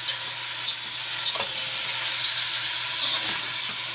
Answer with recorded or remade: recorded